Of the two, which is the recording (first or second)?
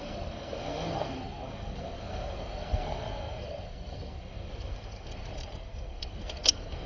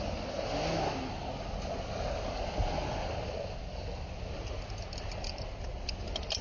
second